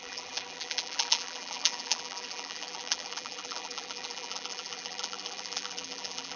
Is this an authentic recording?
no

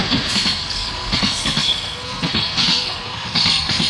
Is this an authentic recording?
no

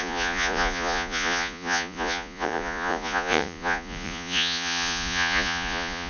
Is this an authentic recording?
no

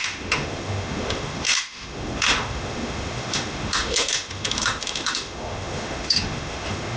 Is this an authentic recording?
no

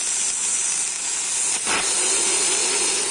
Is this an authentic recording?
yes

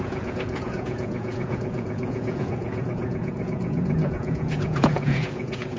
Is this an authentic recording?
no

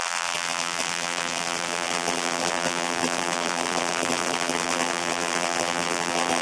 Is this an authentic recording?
no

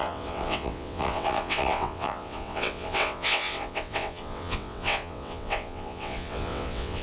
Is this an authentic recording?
no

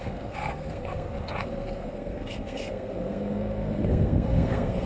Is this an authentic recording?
no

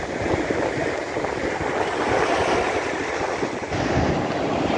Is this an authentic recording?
yes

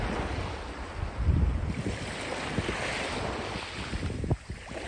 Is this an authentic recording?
yes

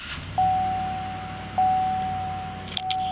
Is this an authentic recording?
yes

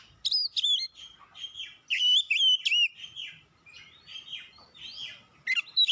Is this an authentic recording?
yes